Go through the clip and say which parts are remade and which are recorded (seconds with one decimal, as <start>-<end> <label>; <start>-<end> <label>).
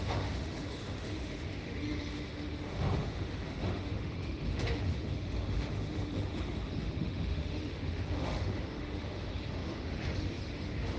0.0-11.0 remade